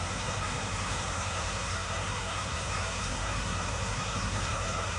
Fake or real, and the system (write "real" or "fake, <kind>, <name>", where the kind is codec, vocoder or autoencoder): fake, codec, SNAC